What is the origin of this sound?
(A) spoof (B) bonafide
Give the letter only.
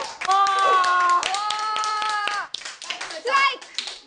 A